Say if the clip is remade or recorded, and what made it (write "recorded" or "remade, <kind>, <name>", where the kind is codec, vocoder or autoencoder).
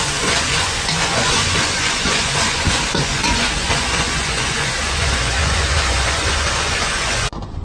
remade, vocoder, Vocos